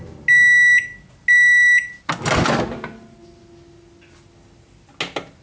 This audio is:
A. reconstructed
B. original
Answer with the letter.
B